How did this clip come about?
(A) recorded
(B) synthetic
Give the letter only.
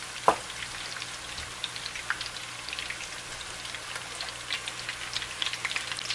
A